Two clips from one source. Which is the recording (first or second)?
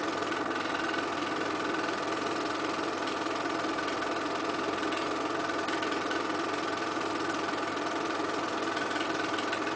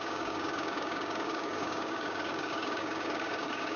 first